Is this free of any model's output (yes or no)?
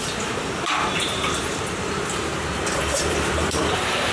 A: no